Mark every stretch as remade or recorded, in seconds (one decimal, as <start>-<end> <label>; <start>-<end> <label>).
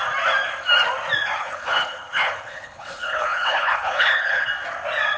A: 0.0-1.4 recorded; 1.4-4.5 remade; 4.5-5.2 recorded